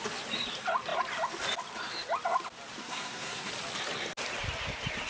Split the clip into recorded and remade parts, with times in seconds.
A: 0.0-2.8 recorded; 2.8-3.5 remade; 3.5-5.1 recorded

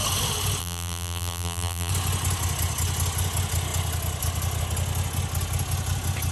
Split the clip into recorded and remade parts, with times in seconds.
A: 0.0-0.6 recorded; 0.6-1.9 remade; 1.9-6.3 recorded

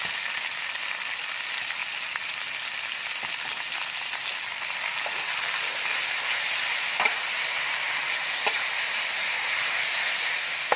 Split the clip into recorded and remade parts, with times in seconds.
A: 0.0-7.5 recorded; 7.5-9.7 remade; 9.7-10.8 recorded

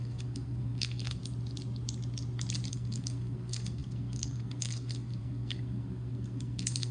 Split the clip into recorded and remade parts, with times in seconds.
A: 0.0-1.2 remade; 1.2-2.7 recorded; 2.7-6.9 remade

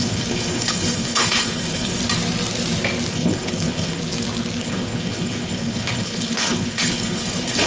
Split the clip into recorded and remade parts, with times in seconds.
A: 0.0-2.0 remade; 2.0-3.1 recorded; 3.1-4.0 remade; 4.0-4.6 recorded; 4.6-7.7 remade